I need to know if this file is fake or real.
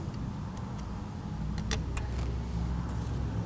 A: real